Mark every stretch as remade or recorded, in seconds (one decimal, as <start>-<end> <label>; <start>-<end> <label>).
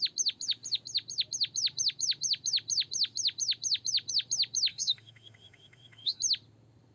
0.0-4.7 recorded; 4.7-6.2 remade; 6.2-6.9 recorded